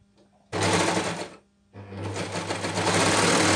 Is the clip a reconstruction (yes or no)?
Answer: no